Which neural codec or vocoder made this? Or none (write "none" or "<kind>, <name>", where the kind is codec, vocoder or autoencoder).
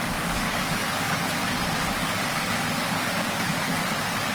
codec, DAC